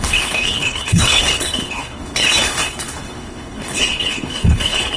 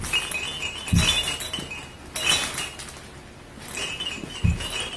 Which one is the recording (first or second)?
second